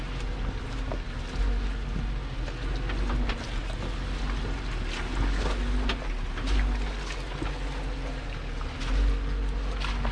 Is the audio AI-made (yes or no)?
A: no